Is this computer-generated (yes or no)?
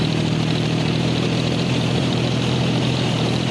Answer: yes